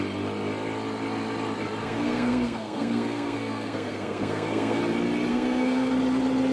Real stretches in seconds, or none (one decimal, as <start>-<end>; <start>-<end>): 0.0-1.8; 4.8-5.3; 5.9-6.5